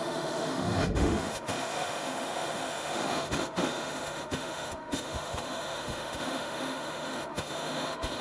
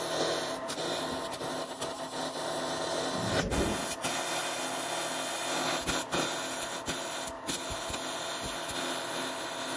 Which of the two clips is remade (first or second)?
first